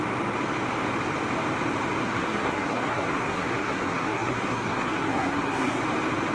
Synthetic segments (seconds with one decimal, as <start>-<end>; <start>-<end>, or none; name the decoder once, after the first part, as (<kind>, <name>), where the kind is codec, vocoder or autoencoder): 2.0-5.8 (codec, SNAC)